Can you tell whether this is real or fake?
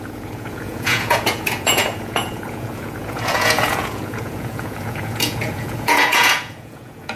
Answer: fake